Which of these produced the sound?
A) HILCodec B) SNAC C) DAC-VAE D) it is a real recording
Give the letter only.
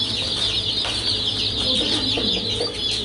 D